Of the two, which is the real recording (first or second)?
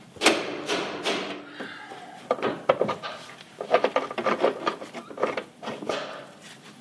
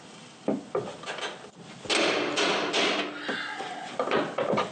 second